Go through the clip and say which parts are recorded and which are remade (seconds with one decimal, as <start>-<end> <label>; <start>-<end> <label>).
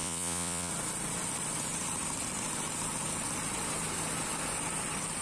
0.0-0.7 remade; 0.7-5.2 recorded